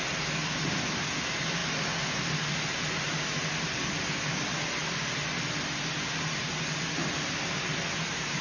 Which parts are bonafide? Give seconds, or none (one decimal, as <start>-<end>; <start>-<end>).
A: 0.0-8.4